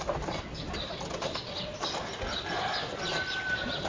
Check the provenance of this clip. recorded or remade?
recorded